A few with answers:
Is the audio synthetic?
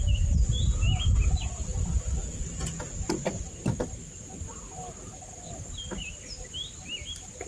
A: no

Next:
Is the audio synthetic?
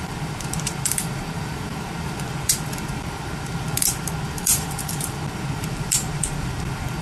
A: yes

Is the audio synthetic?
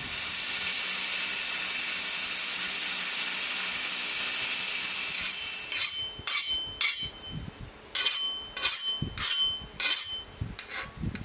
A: no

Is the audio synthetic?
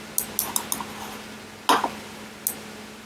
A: no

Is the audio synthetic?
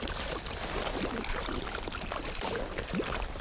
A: yes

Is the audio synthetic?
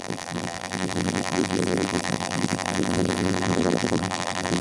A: yes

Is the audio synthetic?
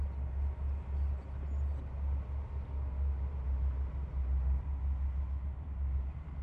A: no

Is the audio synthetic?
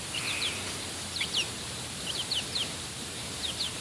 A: yes